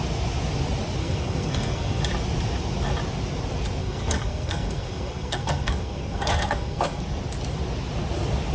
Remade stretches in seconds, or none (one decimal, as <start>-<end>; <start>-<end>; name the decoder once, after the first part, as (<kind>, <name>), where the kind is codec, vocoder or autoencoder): 1.0-2.0 (codec, SNAC); 3.8-7.0